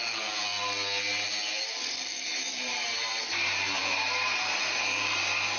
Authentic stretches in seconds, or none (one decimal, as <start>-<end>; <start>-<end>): 0.0-2.1